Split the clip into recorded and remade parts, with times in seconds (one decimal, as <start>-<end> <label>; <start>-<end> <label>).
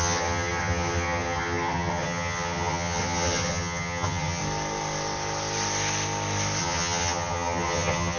0.0-4.4 remade; 4.4-6.6 recorded; 6.6-8.2 remade